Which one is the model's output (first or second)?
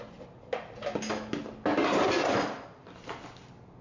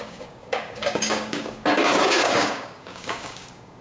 second